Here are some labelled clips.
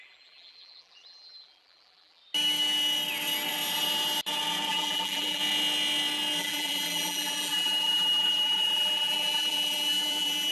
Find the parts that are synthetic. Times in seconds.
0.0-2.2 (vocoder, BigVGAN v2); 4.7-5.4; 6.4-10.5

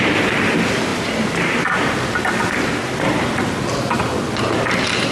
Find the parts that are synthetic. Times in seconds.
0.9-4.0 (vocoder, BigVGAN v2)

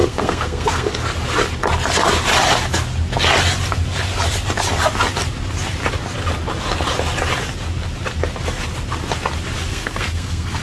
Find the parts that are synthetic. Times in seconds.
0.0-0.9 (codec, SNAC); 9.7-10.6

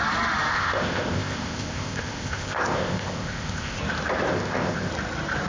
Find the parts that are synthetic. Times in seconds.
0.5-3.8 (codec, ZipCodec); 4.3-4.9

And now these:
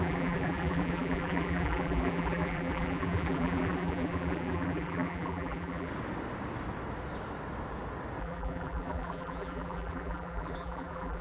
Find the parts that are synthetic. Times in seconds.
0.0-5.9 (vocoder, BigVGAN v2); 8.2-11.2

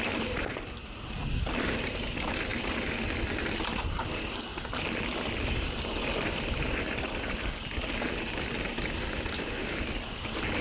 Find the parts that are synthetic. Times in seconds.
none